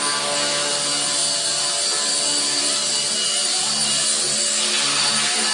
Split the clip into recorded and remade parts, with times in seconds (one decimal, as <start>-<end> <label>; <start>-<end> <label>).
0.0-5.5 recorded